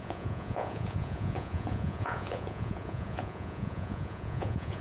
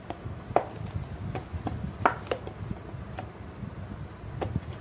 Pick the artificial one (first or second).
first